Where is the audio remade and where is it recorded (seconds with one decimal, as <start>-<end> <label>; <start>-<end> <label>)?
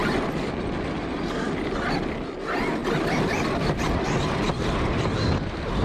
0.0-5.8 recorded